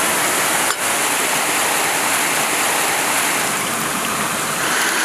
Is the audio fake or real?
real